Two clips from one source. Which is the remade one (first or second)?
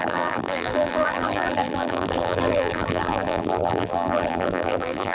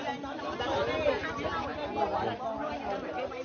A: first